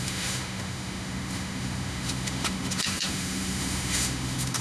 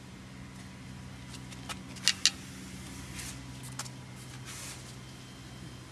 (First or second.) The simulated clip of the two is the first